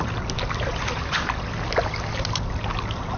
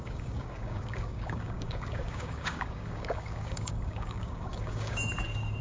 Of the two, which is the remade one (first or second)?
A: second